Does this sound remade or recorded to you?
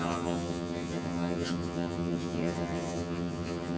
remade